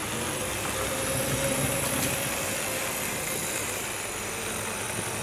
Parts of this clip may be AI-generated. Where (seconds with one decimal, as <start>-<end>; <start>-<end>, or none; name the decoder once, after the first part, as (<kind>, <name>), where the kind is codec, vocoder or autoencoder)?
3.1-5.2 (vocoder, BigVGAN v2)

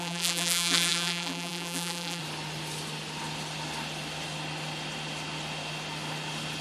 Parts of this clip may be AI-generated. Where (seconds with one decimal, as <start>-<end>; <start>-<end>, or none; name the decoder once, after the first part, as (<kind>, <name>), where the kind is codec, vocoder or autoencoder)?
0.0-2.2 (vocoder, BigVGAN v2)

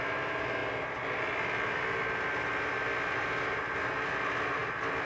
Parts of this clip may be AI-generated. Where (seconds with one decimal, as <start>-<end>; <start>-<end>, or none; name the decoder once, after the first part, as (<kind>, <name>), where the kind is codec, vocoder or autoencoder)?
none

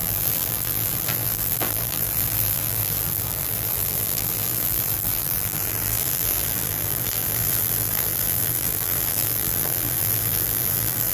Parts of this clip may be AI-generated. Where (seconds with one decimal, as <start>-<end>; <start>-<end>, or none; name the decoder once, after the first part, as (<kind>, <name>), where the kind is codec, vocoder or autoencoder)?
0.0-11.1 (vocoder, BigVGAN v2)

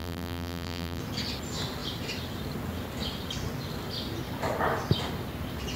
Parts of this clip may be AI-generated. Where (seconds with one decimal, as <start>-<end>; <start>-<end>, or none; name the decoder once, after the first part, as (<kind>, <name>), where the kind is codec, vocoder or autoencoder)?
0.0-1.0 (vocoder, BigVGAN v2)